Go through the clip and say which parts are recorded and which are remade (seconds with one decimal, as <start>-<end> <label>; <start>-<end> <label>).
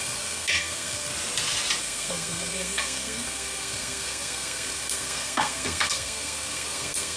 0.0-1.1 remade; 1.1-1.8 recorded; 1.8-7.2 remade